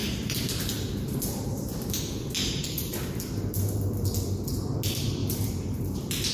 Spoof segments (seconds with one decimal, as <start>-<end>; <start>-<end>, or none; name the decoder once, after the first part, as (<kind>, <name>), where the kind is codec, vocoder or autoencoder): 0.0-2.0 (vocoder, BigVGAN v2); 2.4-3.1; 5.2-6.3